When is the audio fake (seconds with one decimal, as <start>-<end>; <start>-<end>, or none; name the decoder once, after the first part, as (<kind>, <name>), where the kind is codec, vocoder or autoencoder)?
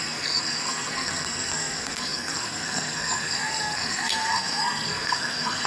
0.0-5.7 (codec, SNAC)